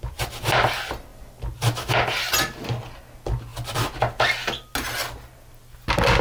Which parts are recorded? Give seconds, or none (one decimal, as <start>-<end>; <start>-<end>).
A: 0.0-6.2